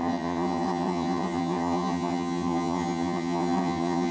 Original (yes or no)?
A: no